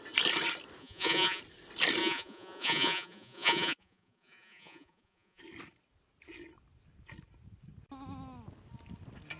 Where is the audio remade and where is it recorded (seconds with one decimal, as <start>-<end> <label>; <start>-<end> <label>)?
0.0-0.8 recorded; 0.8-1.4 remade; 1.4-2.0 recorded; 2.0-5.4 remade; 5.4-9.4 recorded